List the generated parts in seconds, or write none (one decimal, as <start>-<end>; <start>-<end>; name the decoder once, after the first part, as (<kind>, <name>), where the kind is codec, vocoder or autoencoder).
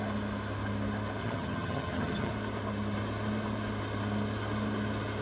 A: 1.2-2.3 (vocoder, HiFi-GAN)